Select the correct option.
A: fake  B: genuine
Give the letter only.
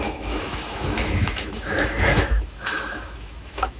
A